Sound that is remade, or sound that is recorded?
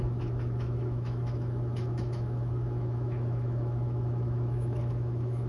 remade